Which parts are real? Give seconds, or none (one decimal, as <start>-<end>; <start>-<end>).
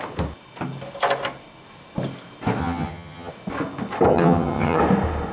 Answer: 0.0-2.6; 3.3-4.1; 4.8-5.3